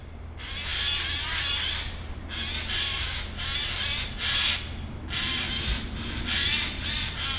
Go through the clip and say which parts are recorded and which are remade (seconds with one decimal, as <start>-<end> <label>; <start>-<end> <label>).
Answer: 0.0-7.4 recorded